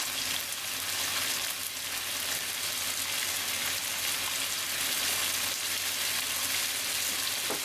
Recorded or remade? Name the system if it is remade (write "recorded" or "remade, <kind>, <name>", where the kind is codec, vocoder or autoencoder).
recorded